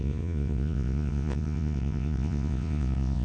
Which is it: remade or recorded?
remade